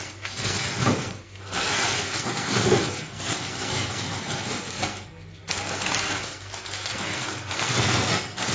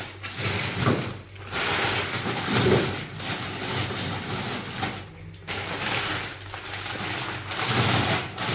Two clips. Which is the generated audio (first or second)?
first